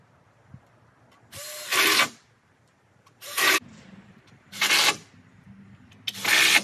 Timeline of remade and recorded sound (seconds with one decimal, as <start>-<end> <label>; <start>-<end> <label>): 0.0-1.7 recorded; 1.7-4.7 remade; 4.7-6.6 recorded